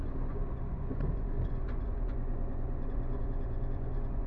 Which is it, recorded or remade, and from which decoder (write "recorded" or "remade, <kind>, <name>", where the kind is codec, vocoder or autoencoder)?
remade, vocoder, Vocos